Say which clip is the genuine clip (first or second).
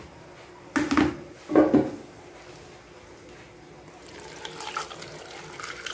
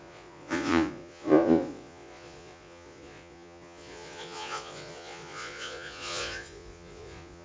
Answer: first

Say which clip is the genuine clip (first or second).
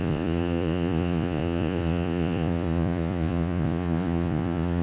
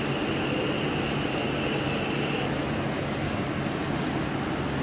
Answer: second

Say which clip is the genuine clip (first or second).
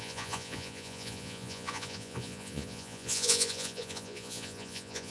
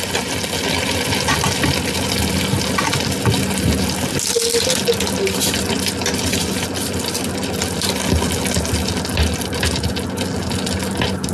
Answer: second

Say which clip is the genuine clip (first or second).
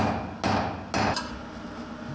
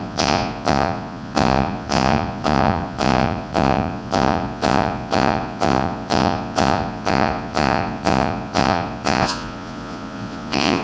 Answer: first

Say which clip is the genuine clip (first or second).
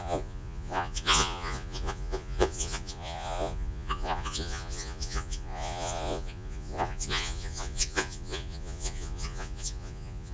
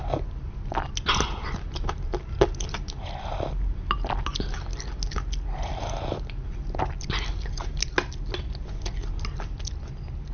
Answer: second